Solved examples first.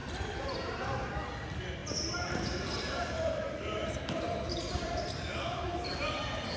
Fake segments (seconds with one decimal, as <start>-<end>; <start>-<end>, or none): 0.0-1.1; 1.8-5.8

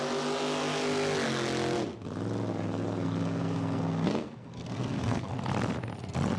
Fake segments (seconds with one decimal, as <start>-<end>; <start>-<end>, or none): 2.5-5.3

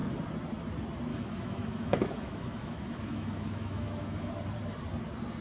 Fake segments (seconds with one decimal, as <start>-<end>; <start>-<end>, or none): 1.1-4.3

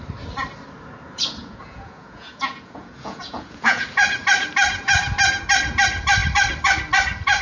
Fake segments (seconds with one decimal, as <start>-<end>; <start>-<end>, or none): 1.4-3.9

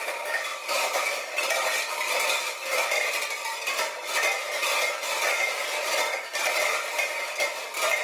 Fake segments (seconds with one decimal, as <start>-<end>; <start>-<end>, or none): 0.5-2.5; 4.6-7.1